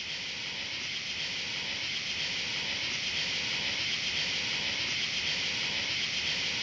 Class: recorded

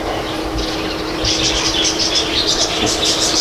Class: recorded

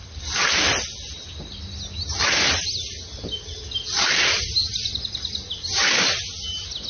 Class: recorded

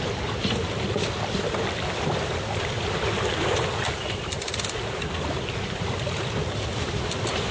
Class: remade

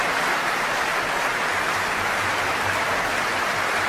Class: recorded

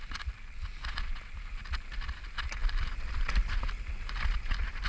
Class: recorded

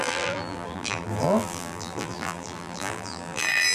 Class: remade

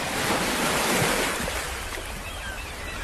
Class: remade